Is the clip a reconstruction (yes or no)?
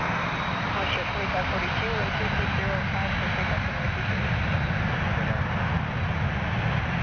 no